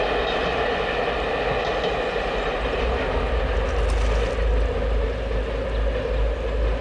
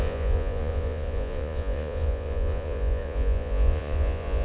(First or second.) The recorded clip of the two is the first